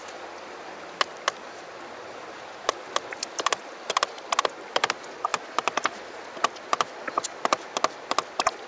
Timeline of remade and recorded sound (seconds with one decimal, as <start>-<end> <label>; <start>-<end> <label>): 0.0-8.7 recorded